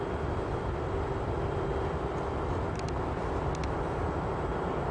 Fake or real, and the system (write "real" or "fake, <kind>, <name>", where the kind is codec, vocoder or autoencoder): fake, vocoder, BigVGAN v2